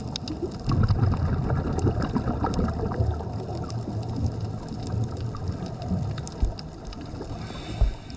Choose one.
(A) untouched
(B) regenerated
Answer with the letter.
A